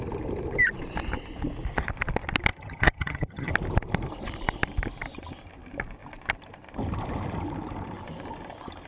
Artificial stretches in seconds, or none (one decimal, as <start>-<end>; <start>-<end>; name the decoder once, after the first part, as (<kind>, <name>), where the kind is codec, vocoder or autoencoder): 2.5-3.5 (vocoder, HiFi-GAN)